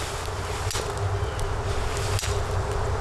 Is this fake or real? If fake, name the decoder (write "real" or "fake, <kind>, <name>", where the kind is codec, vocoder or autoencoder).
real